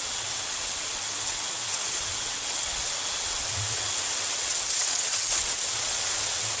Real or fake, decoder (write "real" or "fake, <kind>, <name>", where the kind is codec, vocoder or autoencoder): fake, vocoder, WaveNeXt